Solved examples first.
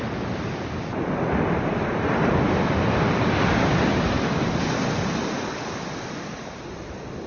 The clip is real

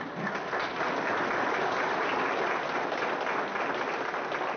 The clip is real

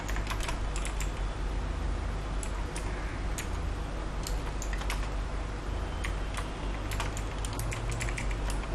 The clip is real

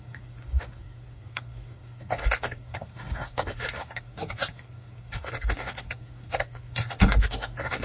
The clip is fake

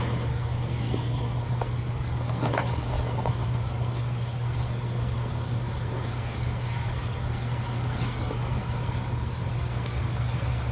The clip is fake